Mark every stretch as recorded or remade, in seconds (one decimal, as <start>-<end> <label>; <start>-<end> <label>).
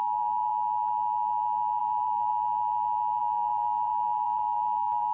0.0-0.5 remade; 0.5-1.8 recorded; 1.8-2.3 remade; 2.3-3.2 recorded; 3.2-5.1 remade